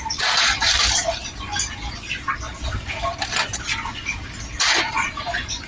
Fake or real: real